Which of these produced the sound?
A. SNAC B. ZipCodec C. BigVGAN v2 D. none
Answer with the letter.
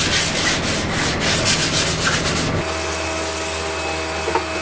D